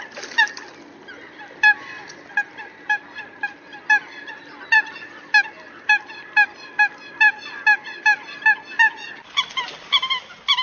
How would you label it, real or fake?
real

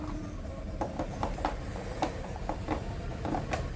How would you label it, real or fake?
real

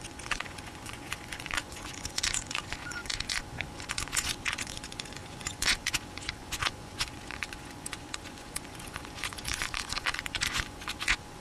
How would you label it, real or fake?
fake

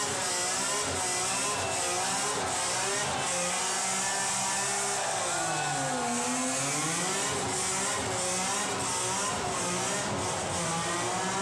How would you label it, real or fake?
real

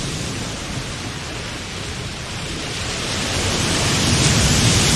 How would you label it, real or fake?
fake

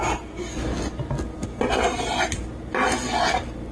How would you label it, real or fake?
real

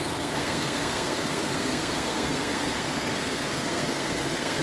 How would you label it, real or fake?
fake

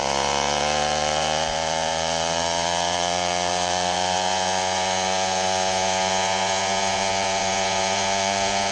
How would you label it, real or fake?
fake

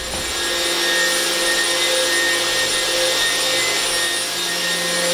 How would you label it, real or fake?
real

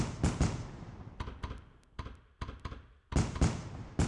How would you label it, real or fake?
real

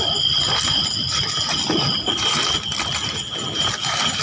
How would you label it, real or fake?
real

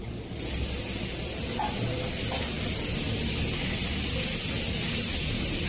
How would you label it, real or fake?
real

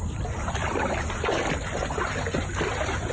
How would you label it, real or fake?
real